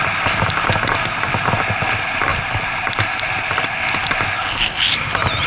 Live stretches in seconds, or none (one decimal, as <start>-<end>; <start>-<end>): 0.0-5.5